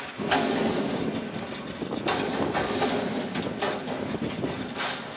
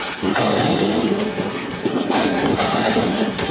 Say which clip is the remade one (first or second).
second